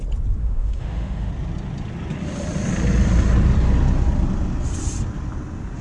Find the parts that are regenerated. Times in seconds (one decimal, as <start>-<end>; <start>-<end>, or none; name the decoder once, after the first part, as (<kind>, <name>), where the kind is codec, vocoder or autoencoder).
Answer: 0.4-1.3 (autoencoder, DAC-VAE)